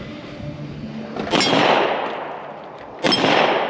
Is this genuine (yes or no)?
yes